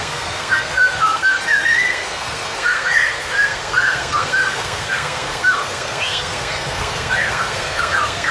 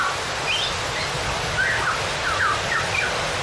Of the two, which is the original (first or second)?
second